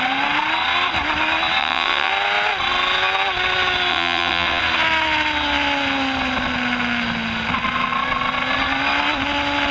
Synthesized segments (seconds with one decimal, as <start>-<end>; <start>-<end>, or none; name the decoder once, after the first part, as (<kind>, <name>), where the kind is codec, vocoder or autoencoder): 1.6-2.1 (vocoder, WaveNeXt); 3.9-4.6